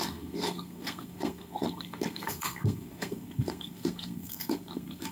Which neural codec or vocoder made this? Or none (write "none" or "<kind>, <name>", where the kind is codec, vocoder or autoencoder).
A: codec, SNAC